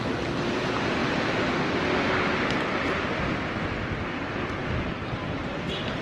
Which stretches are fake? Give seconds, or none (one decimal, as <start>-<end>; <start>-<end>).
none